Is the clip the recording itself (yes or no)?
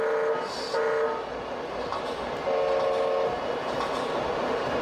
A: yes